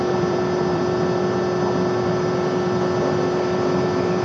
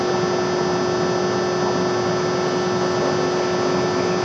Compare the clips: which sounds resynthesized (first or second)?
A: first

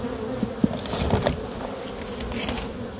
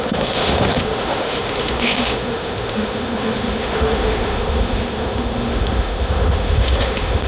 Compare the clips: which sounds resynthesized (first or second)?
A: second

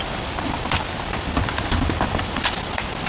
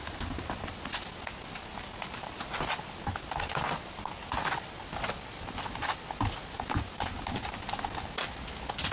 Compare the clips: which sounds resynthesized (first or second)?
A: first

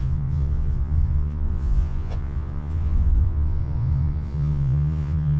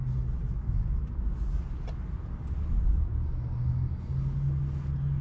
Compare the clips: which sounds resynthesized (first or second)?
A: first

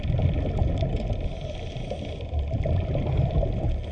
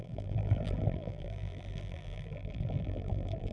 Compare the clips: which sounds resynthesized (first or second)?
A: second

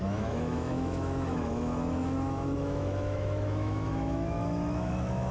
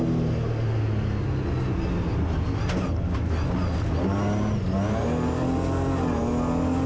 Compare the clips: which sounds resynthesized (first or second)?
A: first